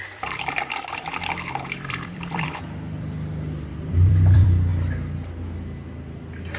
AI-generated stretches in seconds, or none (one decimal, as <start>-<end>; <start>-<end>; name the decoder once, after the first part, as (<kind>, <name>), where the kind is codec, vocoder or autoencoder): 0.0-4.7 (vocoder, BigVGAN v2)